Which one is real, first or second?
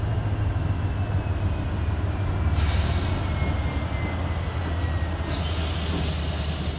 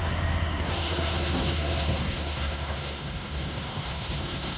first